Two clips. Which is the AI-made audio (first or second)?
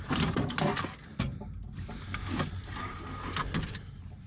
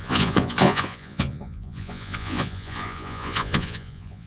second